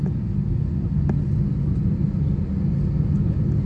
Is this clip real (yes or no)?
yes